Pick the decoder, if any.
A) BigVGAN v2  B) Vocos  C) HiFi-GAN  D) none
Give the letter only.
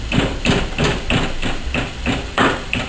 D